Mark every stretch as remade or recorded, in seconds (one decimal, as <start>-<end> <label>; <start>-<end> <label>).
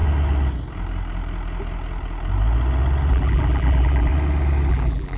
0.0-3.1 recorded; 3.1-4.1 remade; 4.1-4.7 recorded; 4.7-5.2 remade